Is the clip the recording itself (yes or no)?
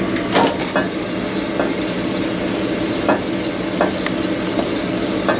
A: yes